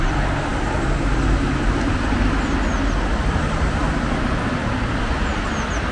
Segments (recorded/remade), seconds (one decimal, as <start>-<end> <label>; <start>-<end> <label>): 0.0-5.9 recorded